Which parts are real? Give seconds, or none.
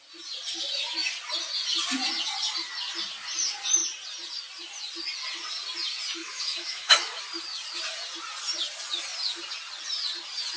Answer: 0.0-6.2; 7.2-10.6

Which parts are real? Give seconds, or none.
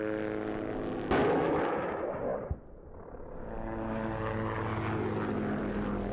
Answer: 0.0-1.2; 1.9-6.1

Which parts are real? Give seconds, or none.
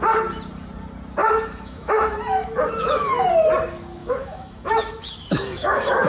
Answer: 0.0-1.2; 3.3-4.0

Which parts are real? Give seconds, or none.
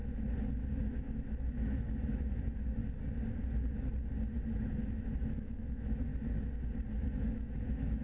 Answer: 0.0-0.8; 2.8-4.6; 6.1-7.0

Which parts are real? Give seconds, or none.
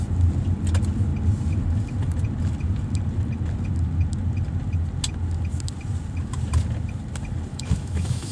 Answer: 0.0-7.5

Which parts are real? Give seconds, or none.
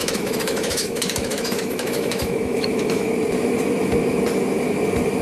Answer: 3.1-5.2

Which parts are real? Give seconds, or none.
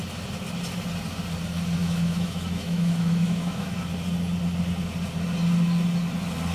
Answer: 0.0-1.8; 3.7-6.5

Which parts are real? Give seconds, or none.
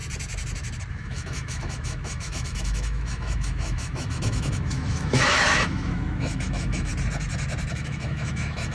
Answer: 0.0-0.9; 6.9-7.7